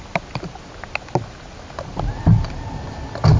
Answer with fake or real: real